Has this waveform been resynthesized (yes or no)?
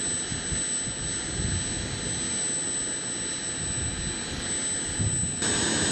no